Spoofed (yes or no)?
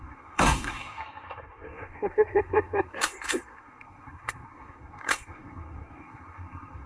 yes